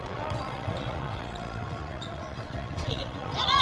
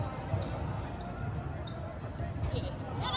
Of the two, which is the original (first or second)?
second